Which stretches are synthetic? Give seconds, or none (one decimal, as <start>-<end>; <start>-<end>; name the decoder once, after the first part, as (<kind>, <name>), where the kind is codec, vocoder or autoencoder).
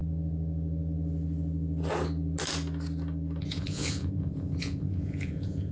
3.4-5.7 (vocoder, Vocos)